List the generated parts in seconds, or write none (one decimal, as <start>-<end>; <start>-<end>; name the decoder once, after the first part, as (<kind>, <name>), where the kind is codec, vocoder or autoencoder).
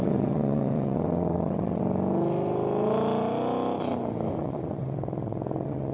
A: 0.0-1.8 (vocoder, WaveNeXt); 4.4-5.9